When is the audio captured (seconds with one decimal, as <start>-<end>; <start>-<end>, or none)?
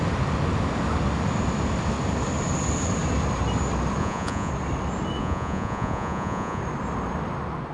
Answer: 0.0-4.0; 4.5-5.2; 6.6-7.7